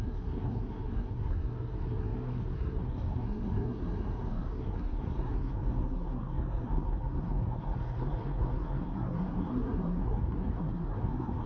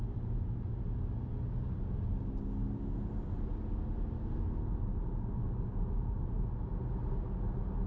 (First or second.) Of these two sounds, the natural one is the second